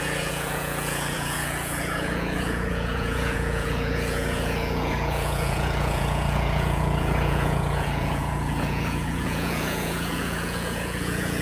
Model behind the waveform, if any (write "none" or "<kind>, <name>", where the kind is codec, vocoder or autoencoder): vocoder, Vocos